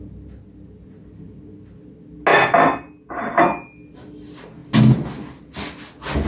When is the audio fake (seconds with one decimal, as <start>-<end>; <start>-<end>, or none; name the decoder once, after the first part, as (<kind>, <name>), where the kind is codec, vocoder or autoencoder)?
none

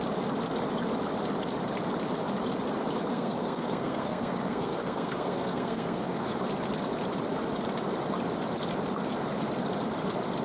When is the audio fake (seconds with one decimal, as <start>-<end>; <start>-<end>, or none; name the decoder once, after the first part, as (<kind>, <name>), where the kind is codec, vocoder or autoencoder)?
3.1-6.4 (codec, SNAC)

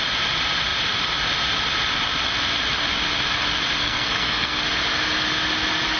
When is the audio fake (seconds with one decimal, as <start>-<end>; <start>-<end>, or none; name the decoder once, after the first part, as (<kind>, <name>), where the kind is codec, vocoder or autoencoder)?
3.8-4.6 (codec, SNAC)

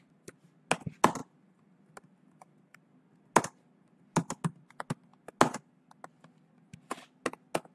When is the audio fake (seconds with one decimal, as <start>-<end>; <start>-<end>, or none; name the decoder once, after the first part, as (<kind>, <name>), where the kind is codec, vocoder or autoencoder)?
none

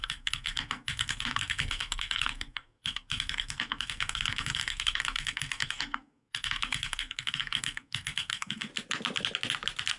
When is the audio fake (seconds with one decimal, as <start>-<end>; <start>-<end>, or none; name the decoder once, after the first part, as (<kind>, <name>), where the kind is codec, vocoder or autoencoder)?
0.0-8.7 (codec, SNAC)

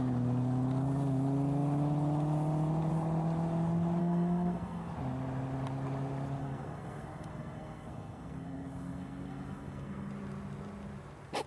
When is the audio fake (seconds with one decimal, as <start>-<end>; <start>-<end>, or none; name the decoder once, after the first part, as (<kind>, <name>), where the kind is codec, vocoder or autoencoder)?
4.0-4.9 (codec, SNAC); 6.4-10.1

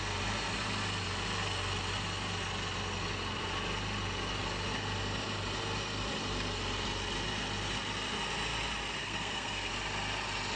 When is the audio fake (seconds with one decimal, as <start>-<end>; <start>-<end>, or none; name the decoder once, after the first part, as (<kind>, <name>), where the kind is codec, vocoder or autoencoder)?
9.0-9.7 (codec, SNAC)

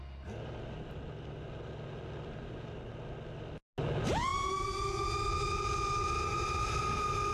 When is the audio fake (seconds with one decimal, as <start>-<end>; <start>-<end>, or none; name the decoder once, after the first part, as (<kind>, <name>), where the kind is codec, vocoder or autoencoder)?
none